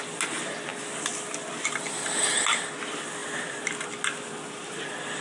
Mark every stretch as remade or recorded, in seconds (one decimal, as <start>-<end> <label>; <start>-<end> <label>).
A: 0.0-5.2 recorded